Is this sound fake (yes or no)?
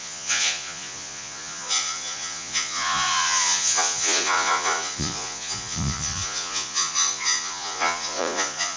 yes